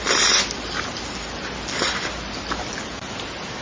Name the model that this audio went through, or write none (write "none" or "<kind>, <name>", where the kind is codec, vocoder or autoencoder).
none